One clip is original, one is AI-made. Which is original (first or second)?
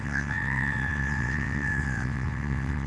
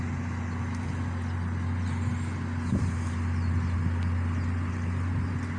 second